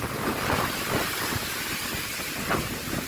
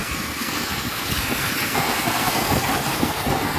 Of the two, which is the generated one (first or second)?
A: second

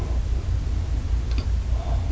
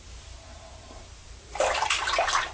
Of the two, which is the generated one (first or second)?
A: second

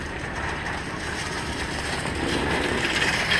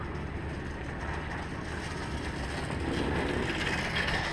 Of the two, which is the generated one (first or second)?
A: first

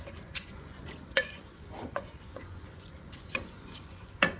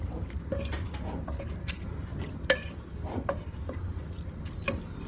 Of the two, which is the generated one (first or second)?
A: first